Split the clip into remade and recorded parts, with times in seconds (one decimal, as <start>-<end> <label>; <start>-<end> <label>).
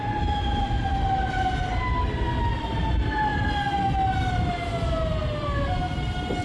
0.0-6.4 recorded